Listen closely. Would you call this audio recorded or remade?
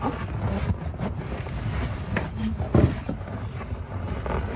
recorded